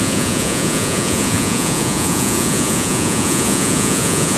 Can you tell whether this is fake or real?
fake